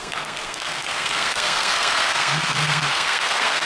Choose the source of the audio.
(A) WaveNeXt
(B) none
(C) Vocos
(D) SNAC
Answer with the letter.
D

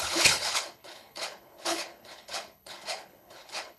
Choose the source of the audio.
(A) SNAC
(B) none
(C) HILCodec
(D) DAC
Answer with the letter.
C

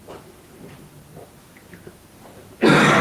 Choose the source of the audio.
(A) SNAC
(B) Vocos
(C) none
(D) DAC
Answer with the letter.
C